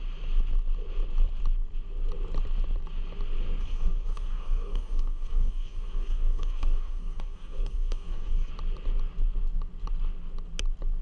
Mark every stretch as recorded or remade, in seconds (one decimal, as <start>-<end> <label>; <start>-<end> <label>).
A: 0.0-3.6 recorded; 3.6-8.5 remade; 8.5-11.0 recorded

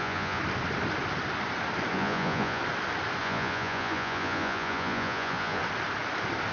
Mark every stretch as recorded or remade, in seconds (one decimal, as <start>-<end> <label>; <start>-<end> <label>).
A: 0.0-0.4 remade; 0.4-1.9 recorded; 1.9-2.6 remade; 2.6-3.2 recorded; 3.2-5.6 remade; 5.6-6.5 recorded

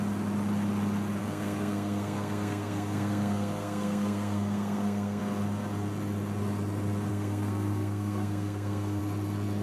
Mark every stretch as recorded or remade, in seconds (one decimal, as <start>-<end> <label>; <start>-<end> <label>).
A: 0.0-1.2 recorded; 1.2-5.2 remade; 5.2-7.1 recorded; 7.1-9.0 remade; 9.0-9.6 recorded

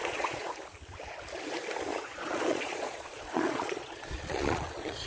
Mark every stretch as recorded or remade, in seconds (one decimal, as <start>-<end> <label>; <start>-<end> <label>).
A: 0.0-0.5 remade; 0.5-1.9 recorded; 1.9-5.1 remade

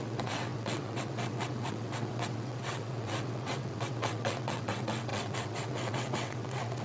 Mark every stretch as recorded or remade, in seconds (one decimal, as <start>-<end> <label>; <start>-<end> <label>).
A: 0.0-6.8 remade

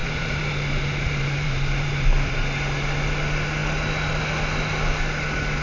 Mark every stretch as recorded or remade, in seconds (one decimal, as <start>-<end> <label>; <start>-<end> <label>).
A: 0.0-2.1 remade; 2.1-5.6 recorded